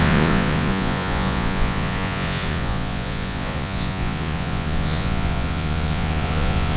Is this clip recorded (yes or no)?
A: no